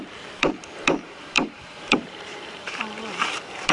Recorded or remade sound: remade